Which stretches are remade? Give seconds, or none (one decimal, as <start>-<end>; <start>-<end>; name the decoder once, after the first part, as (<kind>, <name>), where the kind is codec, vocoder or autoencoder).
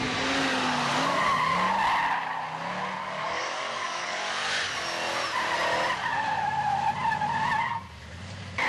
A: 0.5-1.7 (codec, DAC); 3.0-4.3